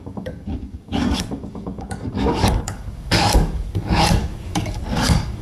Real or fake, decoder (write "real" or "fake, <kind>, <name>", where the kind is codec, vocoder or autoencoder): fake, codec, DAC